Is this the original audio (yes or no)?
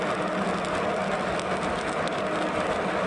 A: yes